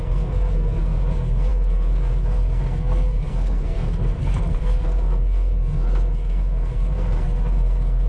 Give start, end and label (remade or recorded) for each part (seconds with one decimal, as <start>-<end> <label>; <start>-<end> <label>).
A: 0.0-8.1 remade